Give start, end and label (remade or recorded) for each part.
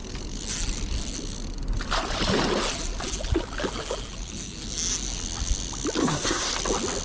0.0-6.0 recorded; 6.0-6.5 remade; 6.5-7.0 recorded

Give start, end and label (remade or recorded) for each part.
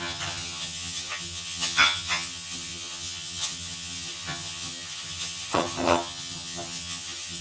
0.0-7.4 remade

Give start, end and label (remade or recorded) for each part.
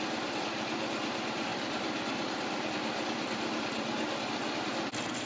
0.0-5.3 recorded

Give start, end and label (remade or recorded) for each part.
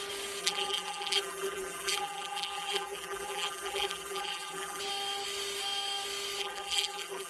0.0-0.4 recorded; 0.4-4.8 remade; 4.8-6.4 recorded; 6.4-7.3 remade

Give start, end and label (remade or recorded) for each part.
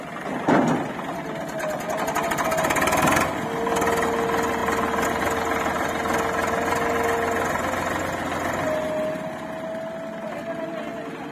0.0-11.3 recorded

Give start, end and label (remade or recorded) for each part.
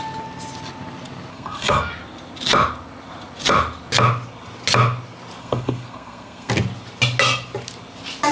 0.0-1.3 recorded; 1.3-1.9 remade; 1.9-5.4 recorded; 5.4-6.5 remade; 6.5-8.3 recorded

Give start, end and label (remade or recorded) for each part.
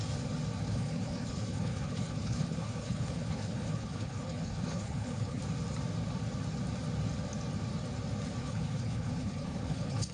0.0-0.7 recorded; 0.7-5.4 remade; 5.4-8.4 recorded; 8.4-10.1 remade